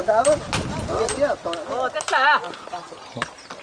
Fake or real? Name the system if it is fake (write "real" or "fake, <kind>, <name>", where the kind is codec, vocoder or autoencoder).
real